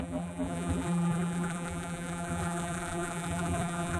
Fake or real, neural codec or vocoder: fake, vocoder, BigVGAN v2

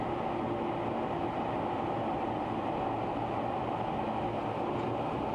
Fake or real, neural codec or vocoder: real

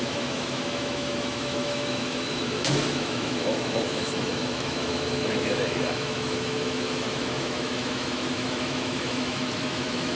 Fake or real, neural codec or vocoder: fake, autoencoder, DAC-VAE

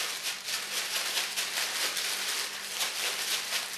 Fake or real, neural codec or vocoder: real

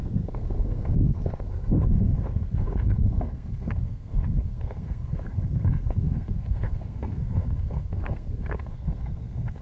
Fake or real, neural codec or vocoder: fake, codec, SNAC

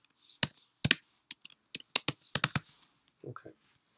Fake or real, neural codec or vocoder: real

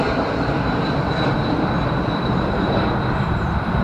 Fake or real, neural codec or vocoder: fake, vocoder, BigVGAN v2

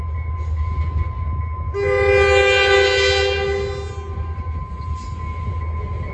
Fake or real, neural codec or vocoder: real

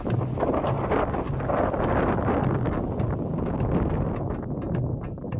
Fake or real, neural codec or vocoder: real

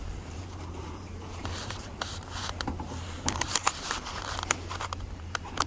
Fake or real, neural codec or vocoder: fake, vocoder, BigVGAN v2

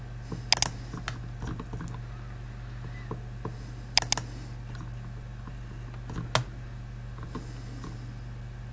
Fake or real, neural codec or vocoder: real